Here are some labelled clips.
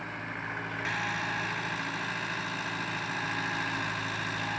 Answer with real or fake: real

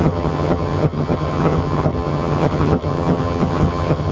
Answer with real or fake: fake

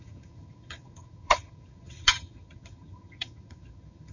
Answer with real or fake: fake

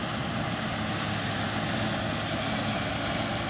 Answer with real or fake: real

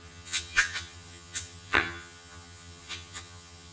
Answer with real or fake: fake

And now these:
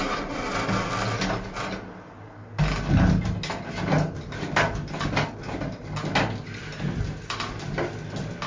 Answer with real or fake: real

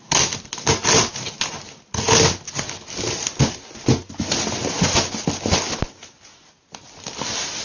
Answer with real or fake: real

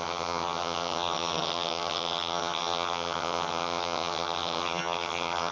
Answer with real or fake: fake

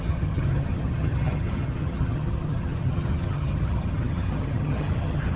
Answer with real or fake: fake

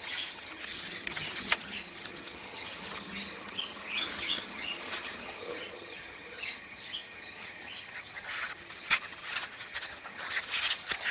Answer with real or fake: fake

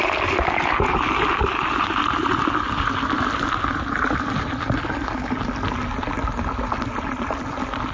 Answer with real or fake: real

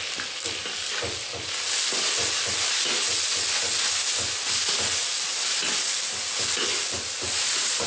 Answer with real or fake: real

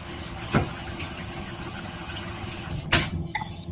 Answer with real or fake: fake